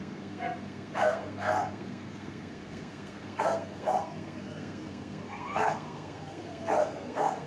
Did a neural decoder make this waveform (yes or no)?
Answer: yes